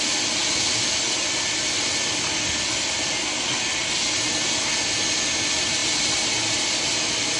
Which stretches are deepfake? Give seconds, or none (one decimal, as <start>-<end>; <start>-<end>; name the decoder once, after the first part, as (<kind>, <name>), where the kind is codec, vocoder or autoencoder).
none